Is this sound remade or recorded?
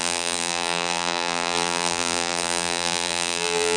remade